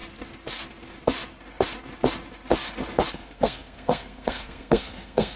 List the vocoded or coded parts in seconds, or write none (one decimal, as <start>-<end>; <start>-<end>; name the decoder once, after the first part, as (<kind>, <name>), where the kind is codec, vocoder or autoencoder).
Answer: 3.1-5.4 (codec, SNAC)